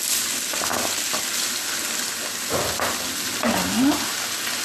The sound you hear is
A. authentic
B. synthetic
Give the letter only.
A